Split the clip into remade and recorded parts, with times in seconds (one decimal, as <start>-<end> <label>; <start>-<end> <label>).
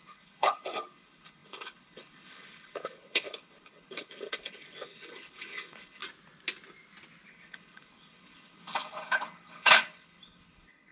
0.0-6.0 remade; 6.0-7.3 recorded; 7.3-10.9 remade